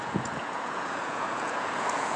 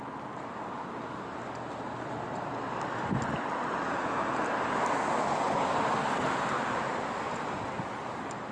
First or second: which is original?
second